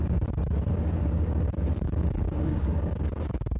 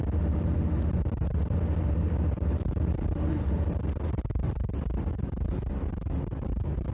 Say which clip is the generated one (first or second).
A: first